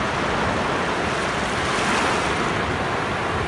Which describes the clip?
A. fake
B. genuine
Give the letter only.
B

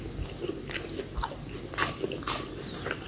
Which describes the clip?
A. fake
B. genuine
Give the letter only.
B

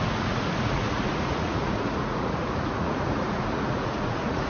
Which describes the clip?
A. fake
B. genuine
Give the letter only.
A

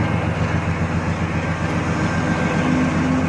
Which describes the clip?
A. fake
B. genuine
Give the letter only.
B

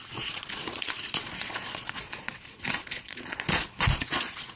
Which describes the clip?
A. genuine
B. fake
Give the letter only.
B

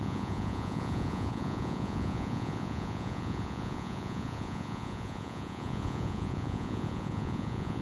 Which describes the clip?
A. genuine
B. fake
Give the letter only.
B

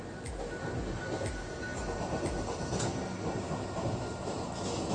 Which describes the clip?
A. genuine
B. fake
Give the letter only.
A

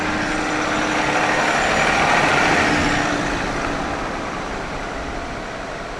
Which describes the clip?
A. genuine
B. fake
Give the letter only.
A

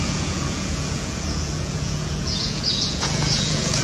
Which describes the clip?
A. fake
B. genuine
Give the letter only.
A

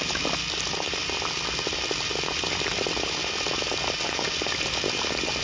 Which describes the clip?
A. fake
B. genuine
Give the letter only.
B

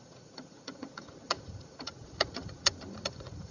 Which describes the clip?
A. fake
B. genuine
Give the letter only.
A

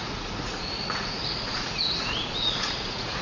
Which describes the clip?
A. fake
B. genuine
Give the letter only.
A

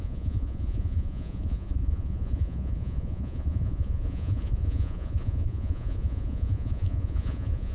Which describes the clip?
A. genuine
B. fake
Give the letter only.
B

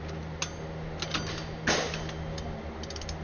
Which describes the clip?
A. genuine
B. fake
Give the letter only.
A